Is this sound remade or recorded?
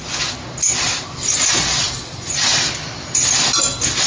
recorded